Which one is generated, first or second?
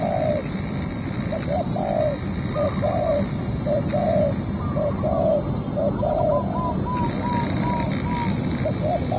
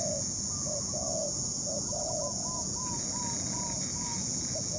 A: second